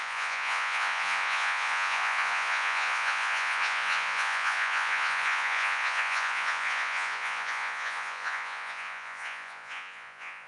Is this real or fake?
fake